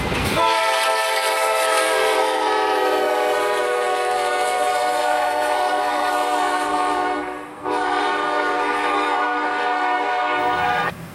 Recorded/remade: remade